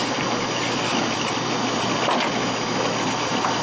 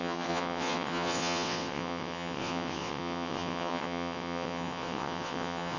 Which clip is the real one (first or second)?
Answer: first